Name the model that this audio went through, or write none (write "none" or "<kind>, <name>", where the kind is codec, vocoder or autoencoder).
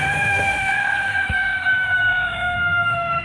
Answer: autoencoder, DAC-VAE